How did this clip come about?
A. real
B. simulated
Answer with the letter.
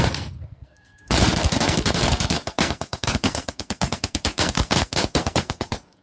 B